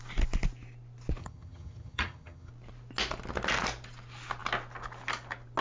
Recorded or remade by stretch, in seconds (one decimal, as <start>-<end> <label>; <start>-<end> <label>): 0.0-1.2 recorded; 1.2-2.5 remade; 2.5-5.6 recorded